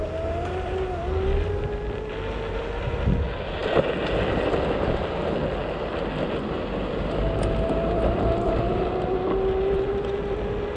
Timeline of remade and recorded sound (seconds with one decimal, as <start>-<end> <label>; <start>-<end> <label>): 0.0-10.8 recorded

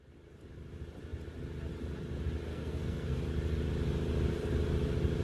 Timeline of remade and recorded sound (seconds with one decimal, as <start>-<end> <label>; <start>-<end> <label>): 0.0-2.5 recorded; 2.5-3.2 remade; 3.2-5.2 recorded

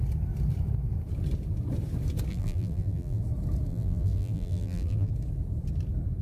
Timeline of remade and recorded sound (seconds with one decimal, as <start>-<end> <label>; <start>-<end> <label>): 0.0-2.3 recorded; 2.3-3.2 remade; 3.2-3.7 recorded; 3.7-5.1 remade; 5.1-6.2 recorded